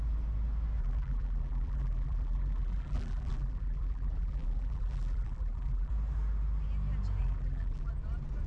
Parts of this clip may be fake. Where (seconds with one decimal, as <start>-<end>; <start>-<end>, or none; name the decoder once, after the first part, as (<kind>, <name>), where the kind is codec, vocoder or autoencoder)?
0.8-5.9 (vocoder, BigVGAN v2); 7.2-7.9